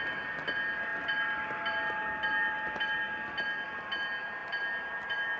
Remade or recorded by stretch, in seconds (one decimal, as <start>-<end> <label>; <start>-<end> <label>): 0.0-5.4 recorded